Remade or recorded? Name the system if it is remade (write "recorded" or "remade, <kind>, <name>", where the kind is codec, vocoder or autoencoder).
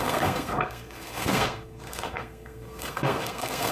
remade, codec, SNAC